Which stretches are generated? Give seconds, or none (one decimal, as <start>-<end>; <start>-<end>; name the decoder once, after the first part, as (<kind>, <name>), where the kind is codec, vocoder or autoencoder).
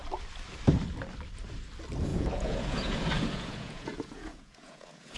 2.1-5.2 (vocoder, Vocos)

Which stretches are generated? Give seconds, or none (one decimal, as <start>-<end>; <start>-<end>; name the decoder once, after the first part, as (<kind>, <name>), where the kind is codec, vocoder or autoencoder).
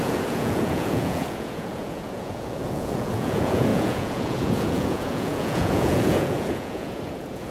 0.0-7.5 (vocoder, Vocos)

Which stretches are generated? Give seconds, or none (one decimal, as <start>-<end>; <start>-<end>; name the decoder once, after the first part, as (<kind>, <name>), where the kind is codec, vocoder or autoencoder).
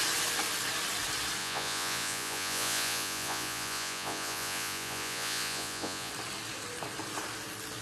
1.4-6.1 (vocoder, Vocos)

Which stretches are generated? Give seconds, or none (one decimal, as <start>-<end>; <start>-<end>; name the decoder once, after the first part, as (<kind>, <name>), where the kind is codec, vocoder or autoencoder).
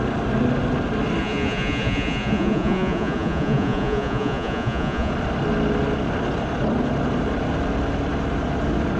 1.2-5.1 (vocoder, Vocos)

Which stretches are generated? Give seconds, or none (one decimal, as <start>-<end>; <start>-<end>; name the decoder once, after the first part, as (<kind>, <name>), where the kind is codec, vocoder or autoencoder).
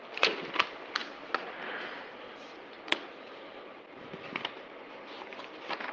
1.0-3.8 (vocoder, Vocos)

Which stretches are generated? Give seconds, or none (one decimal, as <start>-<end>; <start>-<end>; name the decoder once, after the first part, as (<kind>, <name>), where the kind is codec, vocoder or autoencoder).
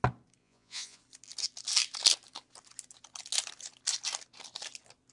0.4-1.0 (vocoder, Vocos)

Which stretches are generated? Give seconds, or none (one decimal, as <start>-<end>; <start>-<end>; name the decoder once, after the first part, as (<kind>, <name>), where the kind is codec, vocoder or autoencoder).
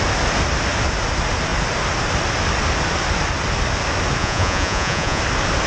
4.2-5.2 (vocoder, Vocos)